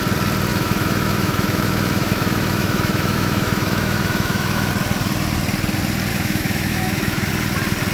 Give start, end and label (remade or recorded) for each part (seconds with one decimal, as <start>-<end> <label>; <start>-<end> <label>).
0.0-0.5 recorded; 0.5-4.7 remade; 4.7-6.1 recorded; 6.1-7.3 remade; 7.3-7.9 recorded

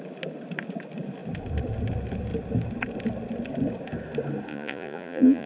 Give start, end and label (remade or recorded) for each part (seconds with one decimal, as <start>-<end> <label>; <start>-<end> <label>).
0.0-4.5 recorded; 4.5-5.5 remade

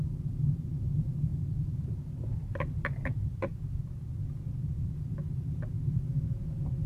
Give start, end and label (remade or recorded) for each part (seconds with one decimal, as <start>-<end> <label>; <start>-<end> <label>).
0.0-6.9 recorded

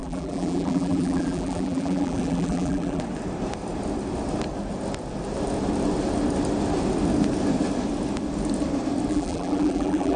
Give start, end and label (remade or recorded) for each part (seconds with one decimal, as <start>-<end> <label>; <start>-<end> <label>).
0.0-3.0 remade; 3.0-9.1 recorded; 9.1-10.2 remade

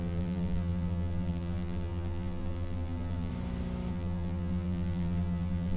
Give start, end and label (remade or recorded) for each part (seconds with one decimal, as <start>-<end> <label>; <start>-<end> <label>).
0.0-3.3 remade; 3.3-3.9 recorded; 3.9-5.8 remade

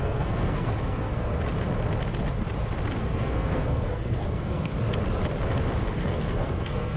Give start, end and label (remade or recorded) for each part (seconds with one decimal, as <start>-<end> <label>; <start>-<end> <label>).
0.0-1.3 remade; 1.3-3.0 recorded; 3.0-4.7 remade; 4.7-5.8 recorded; 5.8-7.0 remade